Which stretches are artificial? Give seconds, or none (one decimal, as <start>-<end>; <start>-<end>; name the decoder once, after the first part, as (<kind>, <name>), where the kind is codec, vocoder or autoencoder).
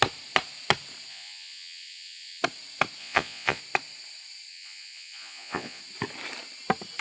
1.1-2.4 (vocoder, Vocos); 3.0-3.6; 4.5-5.8